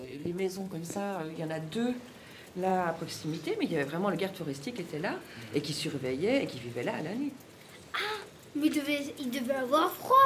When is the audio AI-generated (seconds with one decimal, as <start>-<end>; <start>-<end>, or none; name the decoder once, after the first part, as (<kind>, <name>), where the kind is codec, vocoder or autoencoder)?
0.0-1.3 (codec, SNAC)